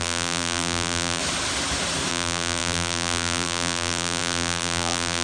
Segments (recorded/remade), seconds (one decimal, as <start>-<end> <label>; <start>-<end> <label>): 0.0-1.2 remade; 1.2-2.1 recorded; 2.1-5.2 remade